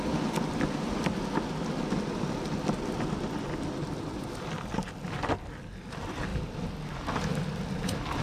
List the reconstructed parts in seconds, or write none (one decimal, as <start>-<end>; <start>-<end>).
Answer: none